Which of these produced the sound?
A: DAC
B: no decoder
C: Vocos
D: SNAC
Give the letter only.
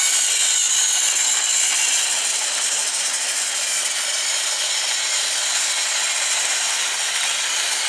B